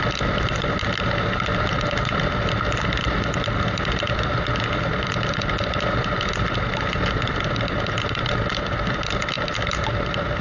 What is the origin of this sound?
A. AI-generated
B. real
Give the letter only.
B